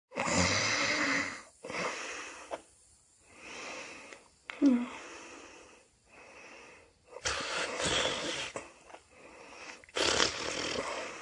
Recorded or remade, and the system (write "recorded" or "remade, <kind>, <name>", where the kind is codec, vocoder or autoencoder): recorded